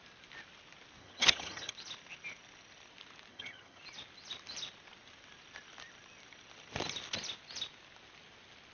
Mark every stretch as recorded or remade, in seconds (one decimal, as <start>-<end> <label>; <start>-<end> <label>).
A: 0.0-1.0 recorded; 1.0-1.7 remade; 1.7-3.3 recorded; 3.3-3.8 remade; 3.8-8.7 recorded